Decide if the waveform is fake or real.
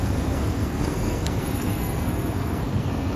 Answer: fake